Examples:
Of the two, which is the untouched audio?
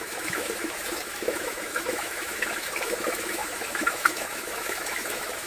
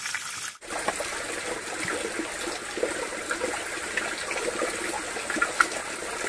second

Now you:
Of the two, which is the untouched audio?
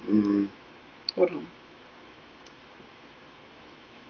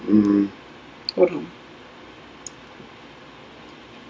second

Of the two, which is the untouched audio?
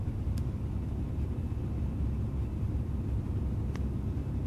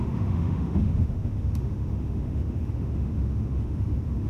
first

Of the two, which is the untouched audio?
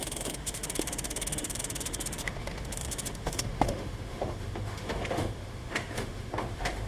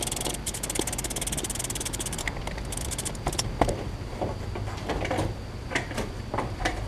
second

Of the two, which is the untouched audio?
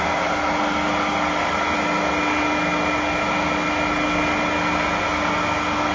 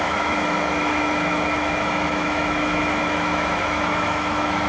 first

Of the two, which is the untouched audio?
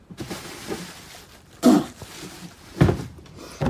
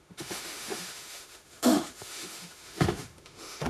first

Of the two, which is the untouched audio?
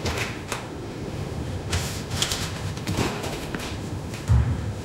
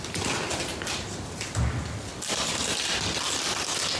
second